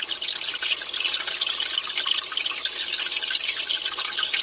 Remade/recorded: recorded